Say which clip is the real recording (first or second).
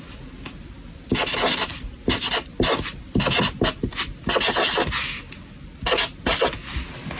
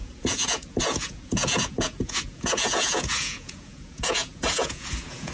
first